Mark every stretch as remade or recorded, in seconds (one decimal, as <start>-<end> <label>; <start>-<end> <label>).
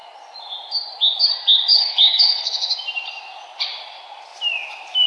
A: 0.0-1.7 recorded; 1.7-2.7 remade; 2.7-5.1 recorded